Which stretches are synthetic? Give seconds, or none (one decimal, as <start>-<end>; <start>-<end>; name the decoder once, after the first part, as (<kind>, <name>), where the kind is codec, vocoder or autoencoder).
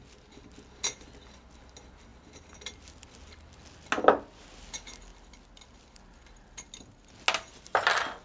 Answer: none